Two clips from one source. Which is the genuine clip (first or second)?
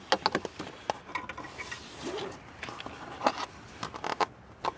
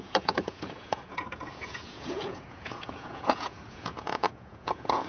first